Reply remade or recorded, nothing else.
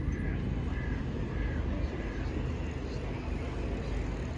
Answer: recorded